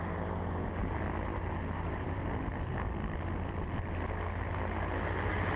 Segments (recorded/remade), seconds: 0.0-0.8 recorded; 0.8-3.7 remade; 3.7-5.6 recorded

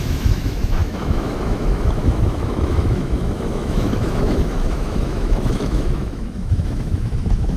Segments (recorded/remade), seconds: 0.0-7.6 remade

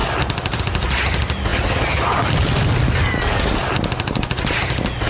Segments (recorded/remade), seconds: 0.0-1.5 recorded; 1.5-2.9 remade; 2.9-5.1 recorded

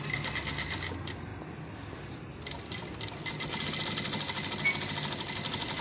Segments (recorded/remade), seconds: 0.0-5.8 recorded

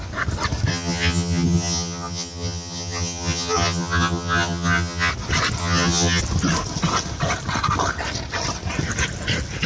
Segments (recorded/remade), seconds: 0.0-0.7 recorded; 0.7-5.1 remade; 5.1-5.6 recorded; 5.6-6.2 remade; 6.2-9.7 recorded

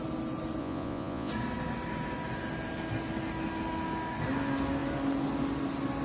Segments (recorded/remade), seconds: 0.0-0.6 recorded; 0.6-1.3 remade; 1.3-6.0 recorded

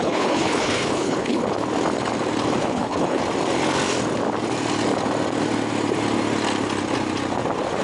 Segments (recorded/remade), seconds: 0.0-1.4 remade; 1.4-2.6 recorded; 2.6-3.2 remade; 3.2-7.8 recorded

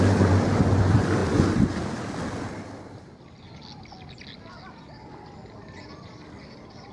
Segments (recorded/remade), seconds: 0.0-6.9 recorded